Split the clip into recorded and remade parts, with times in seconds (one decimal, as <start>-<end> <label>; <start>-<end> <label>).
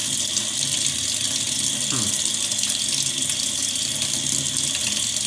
0.0-5.3 recorded